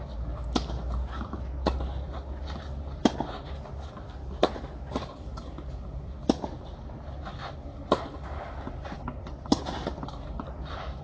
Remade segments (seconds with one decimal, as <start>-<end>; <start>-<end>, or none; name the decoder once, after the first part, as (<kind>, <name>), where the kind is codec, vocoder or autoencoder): none